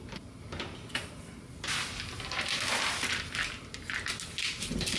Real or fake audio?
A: real